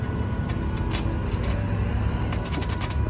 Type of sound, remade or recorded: recorded